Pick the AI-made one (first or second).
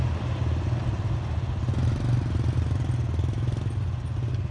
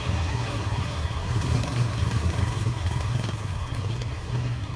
second